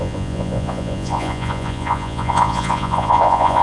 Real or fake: fake